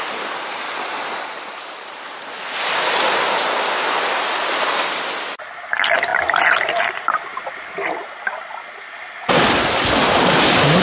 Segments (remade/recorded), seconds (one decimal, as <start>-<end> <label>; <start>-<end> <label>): 0.0-10.8 recorded